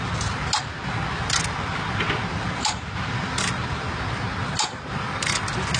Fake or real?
real